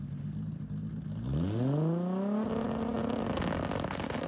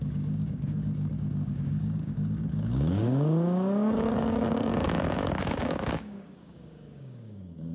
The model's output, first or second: second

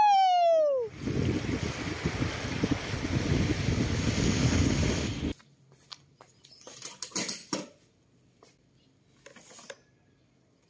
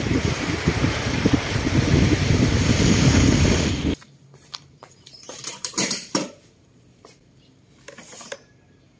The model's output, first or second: second